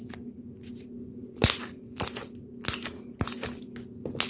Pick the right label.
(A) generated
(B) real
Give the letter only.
B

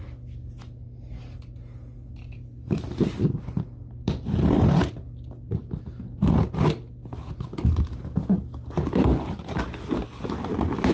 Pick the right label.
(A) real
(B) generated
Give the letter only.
A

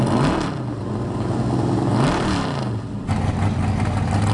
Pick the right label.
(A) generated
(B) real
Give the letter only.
B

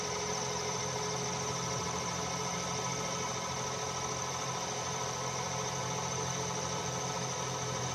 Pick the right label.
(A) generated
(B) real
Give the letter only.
B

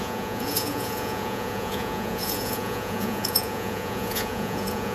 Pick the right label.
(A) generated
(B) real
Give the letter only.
A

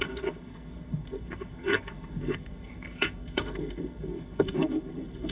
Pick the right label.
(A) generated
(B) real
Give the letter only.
A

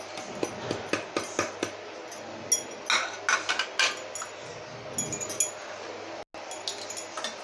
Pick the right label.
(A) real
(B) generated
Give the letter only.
A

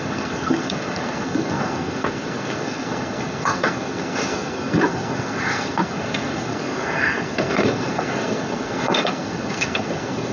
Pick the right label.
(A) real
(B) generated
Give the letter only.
B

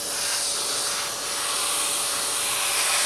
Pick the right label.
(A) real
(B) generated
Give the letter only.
A